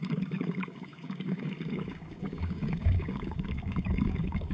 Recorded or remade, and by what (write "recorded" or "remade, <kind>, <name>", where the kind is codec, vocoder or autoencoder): remade, codec, DAC